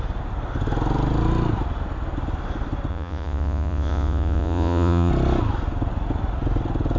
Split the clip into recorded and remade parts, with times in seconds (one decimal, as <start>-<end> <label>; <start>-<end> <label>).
0.0-2.9 recorded; 2.9-5.1 remade; 5.1-7.0 recorded